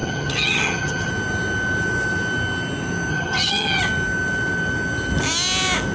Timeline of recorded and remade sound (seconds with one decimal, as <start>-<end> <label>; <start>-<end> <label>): 0.0-1.1 remade; 1.1-3.1 recorded; 3.1-3.8 remade; 3.8-5.9 recorded